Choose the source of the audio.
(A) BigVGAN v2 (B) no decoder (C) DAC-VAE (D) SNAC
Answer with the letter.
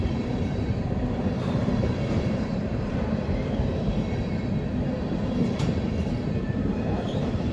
A